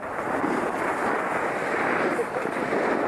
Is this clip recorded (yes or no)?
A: yes